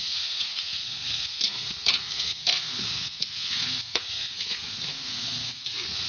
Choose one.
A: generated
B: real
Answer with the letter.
A